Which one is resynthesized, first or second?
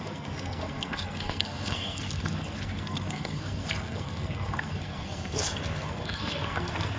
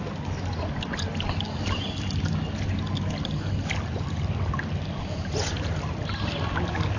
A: first